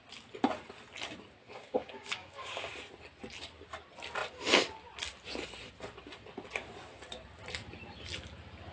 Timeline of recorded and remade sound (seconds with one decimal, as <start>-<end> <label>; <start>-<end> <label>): 0.0-1.4 recorded; 1.4-2.7 remade; 2.7-8.7 recorded